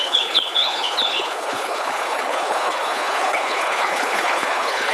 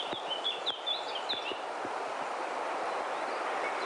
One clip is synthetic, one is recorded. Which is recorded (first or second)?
second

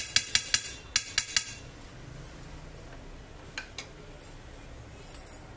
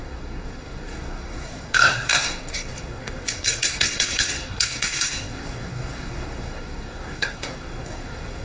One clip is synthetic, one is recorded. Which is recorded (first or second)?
first